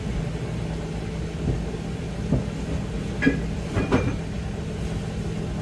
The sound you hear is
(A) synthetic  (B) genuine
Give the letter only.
B